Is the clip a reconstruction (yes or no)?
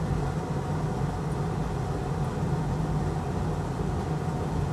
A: no